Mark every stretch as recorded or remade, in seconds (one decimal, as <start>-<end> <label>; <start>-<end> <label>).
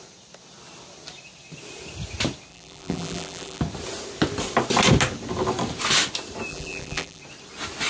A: 0.0-2.5 recorded; 2.5-3.6 remade; 3.6-6.5 recorded; 6.5-7.2 remade; 7.2-7.9 recorded